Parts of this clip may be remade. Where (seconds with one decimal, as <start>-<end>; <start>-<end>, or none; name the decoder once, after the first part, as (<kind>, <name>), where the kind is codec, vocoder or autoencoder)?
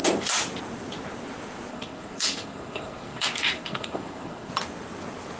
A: 1.7-4.5 (codec, SNAC)